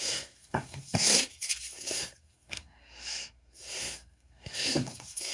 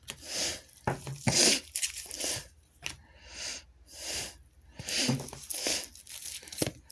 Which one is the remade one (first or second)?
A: first